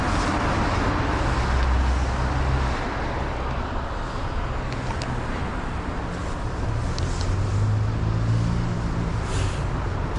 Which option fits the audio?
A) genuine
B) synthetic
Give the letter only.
A